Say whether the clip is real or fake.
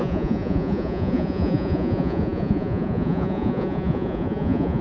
fake